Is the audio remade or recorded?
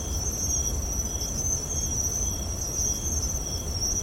recorded